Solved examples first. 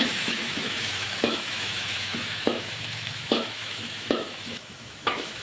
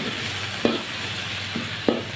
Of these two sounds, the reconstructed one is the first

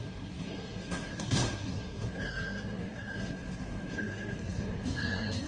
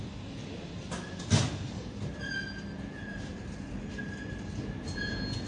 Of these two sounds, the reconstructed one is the first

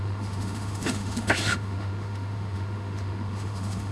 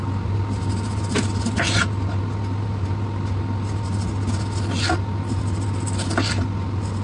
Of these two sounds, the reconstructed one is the first